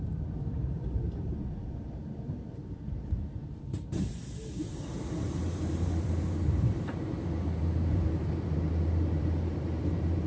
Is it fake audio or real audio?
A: fake